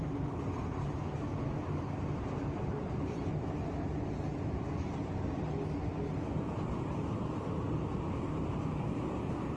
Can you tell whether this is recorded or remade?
recorded